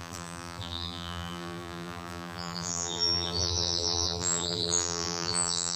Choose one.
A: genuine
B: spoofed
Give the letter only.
B